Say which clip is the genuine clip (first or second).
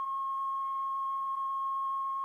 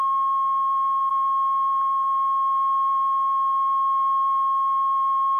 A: second